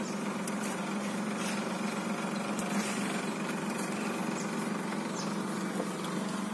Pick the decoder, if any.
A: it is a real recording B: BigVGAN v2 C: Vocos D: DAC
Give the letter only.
B